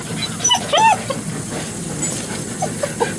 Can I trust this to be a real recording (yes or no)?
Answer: yes